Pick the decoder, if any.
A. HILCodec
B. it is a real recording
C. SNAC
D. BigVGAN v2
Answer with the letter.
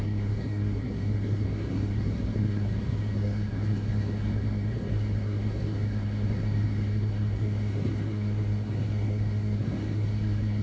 C